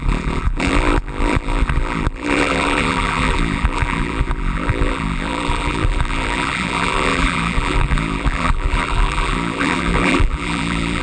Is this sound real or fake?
fake